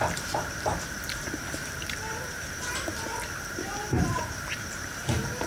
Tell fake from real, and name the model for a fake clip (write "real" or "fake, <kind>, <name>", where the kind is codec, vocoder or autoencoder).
fake, vocoder, BigVGAN v2